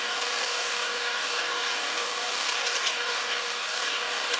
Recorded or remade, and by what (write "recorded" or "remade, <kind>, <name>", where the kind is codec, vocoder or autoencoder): remade, codec, DAC